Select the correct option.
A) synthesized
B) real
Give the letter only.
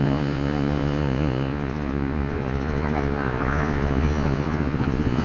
A